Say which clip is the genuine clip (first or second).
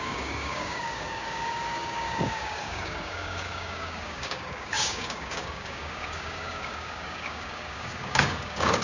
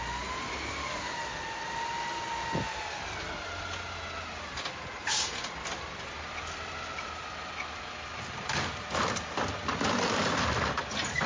second